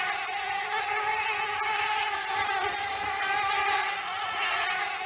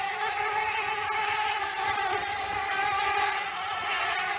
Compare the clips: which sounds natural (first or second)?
first